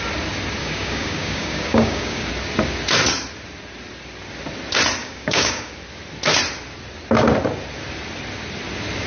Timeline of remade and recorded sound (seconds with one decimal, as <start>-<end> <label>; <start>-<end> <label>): 0.0-0.6 recorded; 0.6-2.3 remade; 2.3-5.0 recorded; 5.0-5.7 remade; 5.7-9.1 recorded

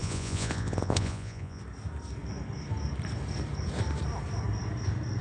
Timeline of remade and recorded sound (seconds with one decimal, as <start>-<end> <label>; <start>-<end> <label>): 0.0-1.6 remade; 1.6-5.2 recorded